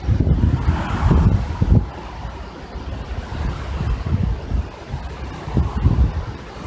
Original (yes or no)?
yes